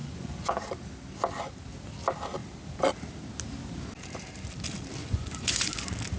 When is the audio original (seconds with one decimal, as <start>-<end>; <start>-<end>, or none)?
0.7-5.0; 5.7-6.2